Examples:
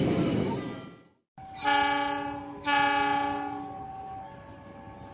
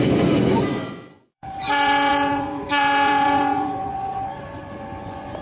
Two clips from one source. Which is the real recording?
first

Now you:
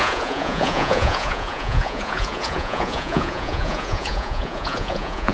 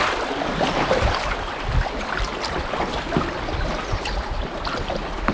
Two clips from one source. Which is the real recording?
second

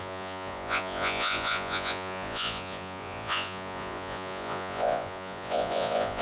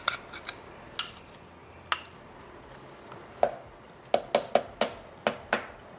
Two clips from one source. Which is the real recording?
second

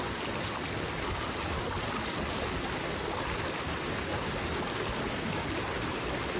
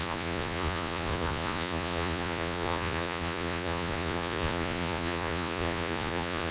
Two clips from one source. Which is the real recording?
first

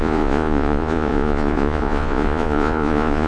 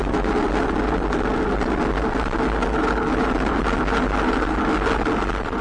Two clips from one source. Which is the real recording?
second